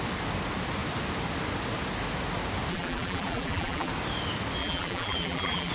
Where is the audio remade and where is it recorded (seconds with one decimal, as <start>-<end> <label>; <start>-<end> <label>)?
0.0-2.7 recorded; 2.7-3.9 remade; 3.9-4.6 recorded; 4.6-5.7 remade